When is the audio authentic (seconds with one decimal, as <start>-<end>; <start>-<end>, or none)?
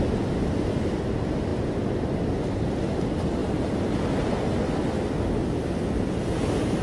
0.0-6.8